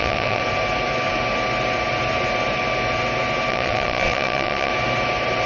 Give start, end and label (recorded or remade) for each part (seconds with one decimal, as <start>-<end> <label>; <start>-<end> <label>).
0.0-0.4 remade; 0.4-3.5 recorded; 3.5-4.7 remade; 4.7-5.5 recorded